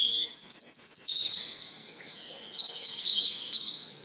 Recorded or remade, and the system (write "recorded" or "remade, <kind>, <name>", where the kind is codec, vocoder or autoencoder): remade, codec, SNAC